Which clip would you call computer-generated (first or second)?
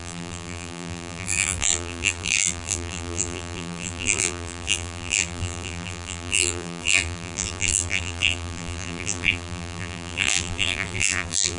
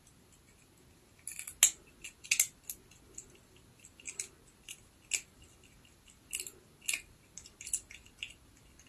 first